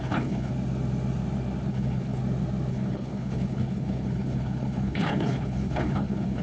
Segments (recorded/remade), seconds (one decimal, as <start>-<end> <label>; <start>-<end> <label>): 0.0-0.5 remade; 0.5-1.7 recorded; 1.7-2.2 remade; 2.2-2.7 recorded; 2.7-6.4 remade